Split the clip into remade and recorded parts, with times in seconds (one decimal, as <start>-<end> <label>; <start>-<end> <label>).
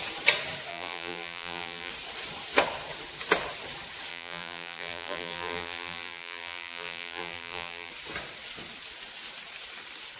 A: 0.0-0.7 recorded; 0.7-1.9 remade; 1.9-4.1 recorded; 4.1-7.9 remade; 7.9-10.2 recorded